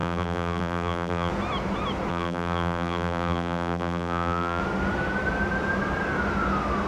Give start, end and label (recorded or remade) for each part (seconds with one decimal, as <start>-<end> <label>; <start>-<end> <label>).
0.0-1.3 remade; 1.3-2.1 recorded; 2.1-4.6 remade; 4.6-6.9 recorded